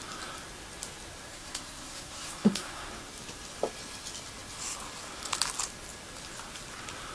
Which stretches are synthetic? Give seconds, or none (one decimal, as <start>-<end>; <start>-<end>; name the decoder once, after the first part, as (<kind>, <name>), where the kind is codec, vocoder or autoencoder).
1.3-2.9 (codec, SNAC)